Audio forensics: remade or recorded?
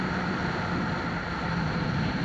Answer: recorded